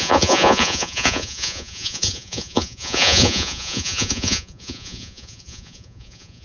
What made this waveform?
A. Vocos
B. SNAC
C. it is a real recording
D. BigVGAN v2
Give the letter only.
A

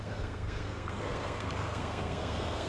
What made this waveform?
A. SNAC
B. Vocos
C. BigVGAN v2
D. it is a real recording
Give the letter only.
A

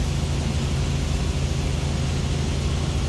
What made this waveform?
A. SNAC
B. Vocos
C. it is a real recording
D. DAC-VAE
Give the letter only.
C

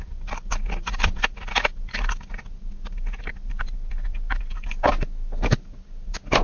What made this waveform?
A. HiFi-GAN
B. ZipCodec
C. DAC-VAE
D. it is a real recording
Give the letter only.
D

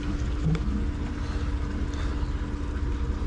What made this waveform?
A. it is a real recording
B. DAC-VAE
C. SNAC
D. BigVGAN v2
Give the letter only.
A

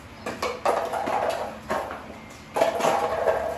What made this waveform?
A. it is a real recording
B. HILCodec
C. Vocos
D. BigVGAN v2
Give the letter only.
A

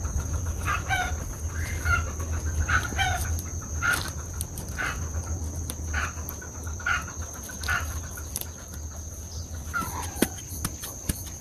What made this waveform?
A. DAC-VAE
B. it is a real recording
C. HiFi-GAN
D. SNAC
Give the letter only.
B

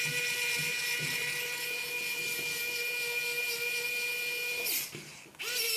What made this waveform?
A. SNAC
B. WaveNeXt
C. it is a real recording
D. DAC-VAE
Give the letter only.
C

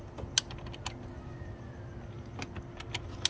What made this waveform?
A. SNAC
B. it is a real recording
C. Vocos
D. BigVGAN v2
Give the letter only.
B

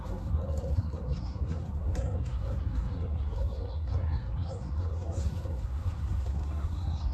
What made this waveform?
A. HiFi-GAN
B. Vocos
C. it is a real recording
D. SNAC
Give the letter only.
D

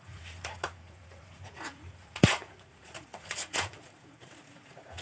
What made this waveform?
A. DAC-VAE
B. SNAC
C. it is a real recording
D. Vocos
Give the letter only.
D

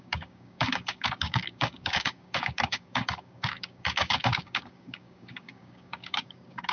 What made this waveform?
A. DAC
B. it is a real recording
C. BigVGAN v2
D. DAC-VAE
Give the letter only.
A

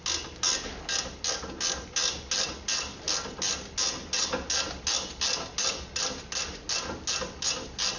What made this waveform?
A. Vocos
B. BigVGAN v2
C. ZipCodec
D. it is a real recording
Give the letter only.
D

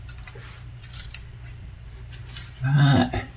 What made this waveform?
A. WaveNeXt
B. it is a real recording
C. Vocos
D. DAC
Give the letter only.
B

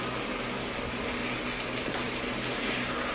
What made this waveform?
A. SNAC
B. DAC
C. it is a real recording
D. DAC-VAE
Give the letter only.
C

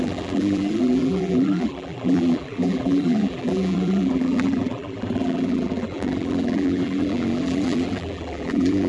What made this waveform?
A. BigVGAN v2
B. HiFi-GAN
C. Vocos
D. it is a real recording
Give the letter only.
A